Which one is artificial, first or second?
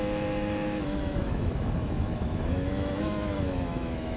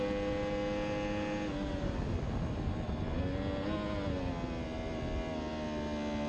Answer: first